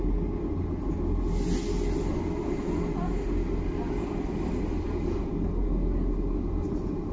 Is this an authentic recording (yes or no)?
yes